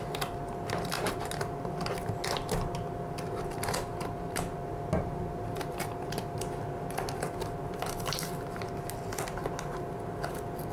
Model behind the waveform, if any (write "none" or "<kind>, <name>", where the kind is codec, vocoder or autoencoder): none